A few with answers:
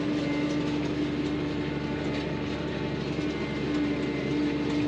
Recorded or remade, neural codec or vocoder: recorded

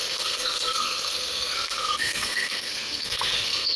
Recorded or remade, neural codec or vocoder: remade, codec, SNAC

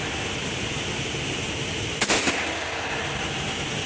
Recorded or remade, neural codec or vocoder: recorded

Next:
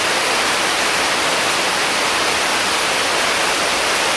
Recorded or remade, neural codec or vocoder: recorded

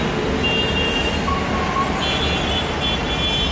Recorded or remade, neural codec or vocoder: recorded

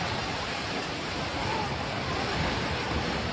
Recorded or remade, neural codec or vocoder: recorded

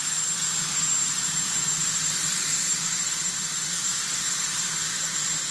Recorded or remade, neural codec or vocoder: recorded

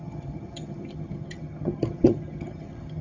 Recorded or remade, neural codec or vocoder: remade, vocoder, HiFi-GAN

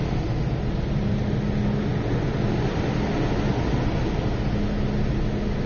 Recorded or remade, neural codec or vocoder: recorded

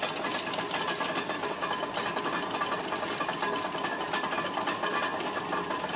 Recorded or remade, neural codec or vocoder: recorded